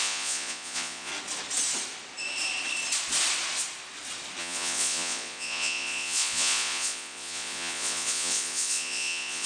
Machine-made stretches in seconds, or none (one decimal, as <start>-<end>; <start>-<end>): 0.0-1.1; 4.4-9.5